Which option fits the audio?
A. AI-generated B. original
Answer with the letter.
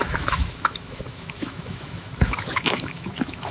A